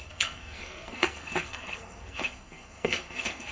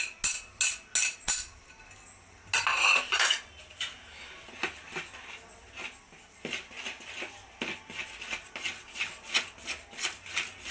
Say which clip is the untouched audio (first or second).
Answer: second